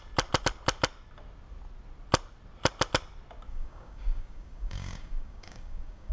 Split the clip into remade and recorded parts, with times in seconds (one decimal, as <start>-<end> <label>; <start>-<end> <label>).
0.0-3.5 recorded; 3.5-6.1 remade